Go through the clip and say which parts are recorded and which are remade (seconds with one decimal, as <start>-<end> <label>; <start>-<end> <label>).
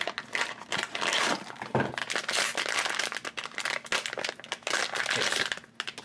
0.0-6.0 recorded